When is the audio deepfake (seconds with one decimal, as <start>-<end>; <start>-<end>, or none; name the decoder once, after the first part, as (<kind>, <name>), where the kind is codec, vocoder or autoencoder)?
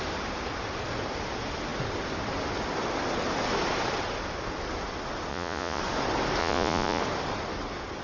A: 5.3-5.8 (vocoder, Vocos); 6.4-7.0